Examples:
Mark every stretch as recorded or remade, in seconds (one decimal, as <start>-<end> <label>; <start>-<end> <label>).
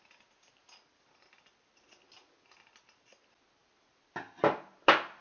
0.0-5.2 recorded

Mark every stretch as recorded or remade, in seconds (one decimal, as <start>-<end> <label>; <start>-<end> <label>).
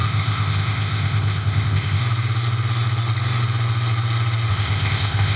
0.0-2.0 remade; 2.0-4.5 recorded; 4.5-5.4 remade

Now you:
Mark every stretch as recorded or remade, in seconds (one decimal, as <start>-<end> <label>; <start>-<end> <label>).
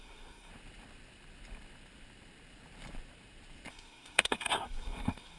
0.0-0.5 remade; 0.5-3.7 recorded; 3.7-5.4 remade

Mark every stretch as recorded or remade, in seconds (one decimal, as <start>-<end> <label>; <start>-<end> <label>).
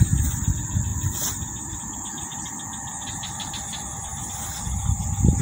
0.0-5.4 recorded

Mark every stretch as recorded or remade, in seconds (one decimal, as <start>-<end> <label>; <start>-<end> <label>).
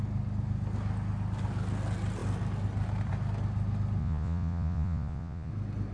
0.0-4.0 recorded; 4.0-5.5 remade; 5.5-5.9 recorded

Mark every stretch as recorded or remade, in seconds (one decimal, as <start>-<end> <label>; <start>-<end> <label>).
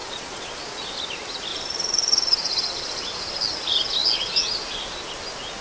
0.0-0.9 remade; 0.9-1.5 recorded; 1.5-3.1 remade; 3.1-5.6 recorded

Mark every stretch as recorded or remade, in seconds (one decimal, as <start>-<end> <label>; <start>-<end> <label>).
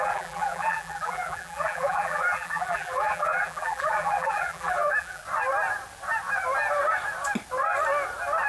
0.0-5.2 remade; 5.2-8.5 recorded